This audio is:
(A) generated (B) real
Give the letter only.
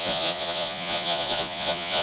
A